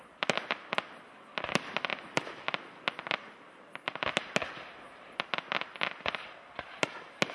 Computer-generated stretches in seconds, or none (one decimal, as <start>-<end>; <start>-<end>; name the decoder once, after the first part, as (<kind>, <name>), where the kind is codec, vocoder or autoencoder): none